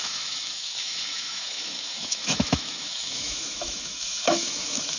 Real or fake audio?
fake